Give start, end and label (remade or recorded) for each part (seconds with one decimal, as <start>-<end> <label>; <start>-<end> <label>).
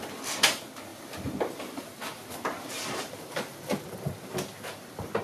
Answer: 0.0-5.2 recorded